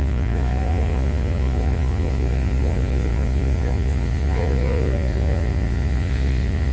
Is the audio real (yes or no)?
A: no